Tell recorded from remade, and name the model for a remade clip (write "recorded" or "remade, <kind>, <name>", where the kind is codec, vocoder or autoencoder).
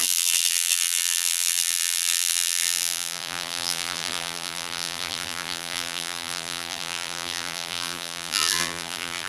remade, vocoder, BigVGAN v2